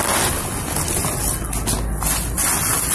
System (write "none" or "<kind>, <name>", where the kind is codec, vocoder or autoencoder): none